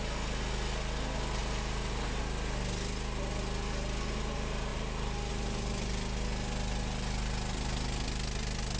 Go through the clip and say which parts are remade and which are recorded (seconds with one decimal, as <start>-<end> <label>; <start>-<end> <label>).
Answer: 0.0-1.4 recorded; 1.4-2.2 remade; 2.2-4.7 recorded; 4.7-5.3 remade; 5.3-8.8 recorded